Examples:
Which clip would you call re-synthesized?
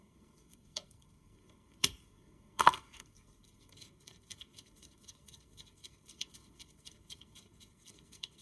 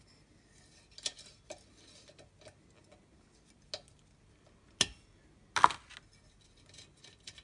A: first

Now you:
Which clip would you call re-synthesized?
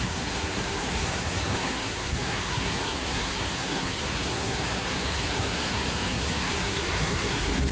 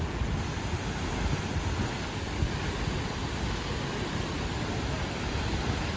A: first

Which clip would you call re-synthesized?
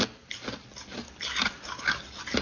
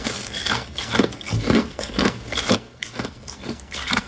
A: second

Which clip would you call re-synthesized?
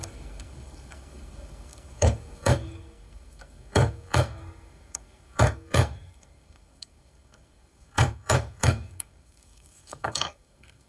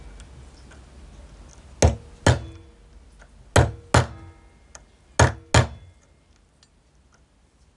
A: first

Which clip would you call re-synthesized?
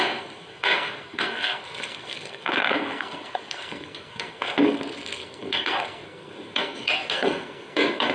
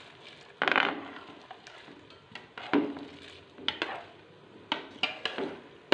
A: first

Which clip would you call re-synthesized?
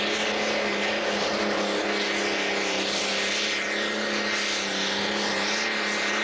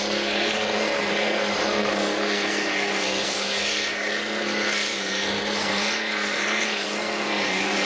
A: second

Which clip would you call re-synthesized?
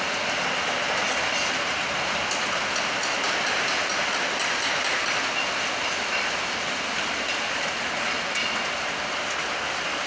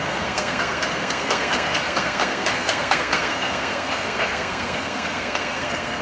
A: second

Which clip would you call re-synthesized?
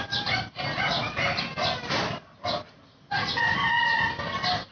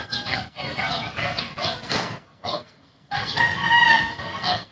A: second